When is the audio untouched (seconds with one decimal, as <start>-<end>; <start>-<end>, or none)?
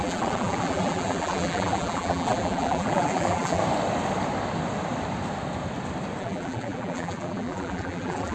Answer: 3.6-6.2